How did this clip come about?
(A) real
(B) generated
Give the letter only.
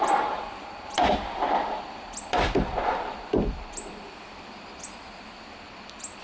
B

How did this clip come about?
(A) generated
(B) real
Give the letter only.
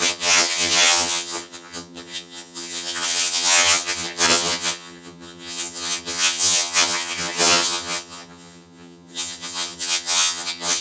A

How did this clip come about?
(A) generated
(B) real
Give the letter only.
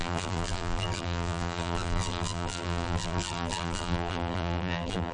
A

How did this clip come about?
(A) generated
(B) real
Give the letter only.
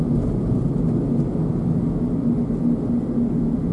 B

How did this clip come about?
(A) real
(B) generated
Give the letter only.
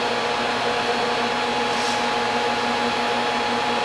A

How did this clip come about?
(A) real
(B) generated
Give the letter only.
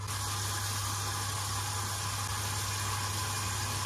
A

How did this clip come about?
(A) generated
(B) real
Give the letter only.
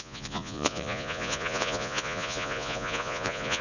A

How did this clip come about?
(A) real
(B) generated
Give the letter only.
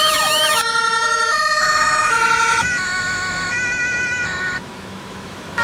B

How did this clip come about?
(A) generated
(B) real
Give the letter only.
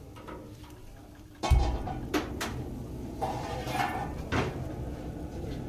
A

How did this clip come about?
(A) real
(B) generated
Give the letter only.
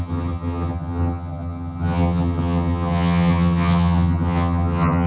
B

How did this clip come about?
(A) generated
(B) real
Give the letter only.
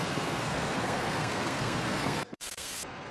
A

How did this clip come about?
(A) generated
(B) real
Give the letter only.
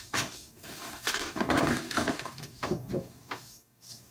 A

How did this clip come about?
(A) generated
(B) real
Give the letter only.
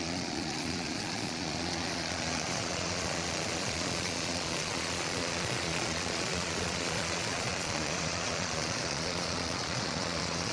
A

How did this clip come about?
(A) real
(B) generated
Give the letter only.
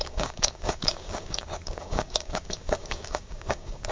B